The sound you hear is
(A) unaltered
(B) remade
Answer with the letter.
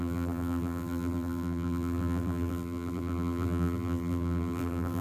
B